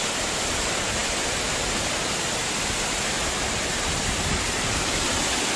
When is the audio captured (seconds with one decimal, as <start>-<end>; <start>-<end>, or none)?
0.0-5.6